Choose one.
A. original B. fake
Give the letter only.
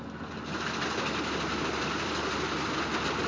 A